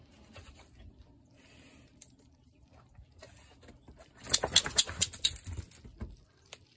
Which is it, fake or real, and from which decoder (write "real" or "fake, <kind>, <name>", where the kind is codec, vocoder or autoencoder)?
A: real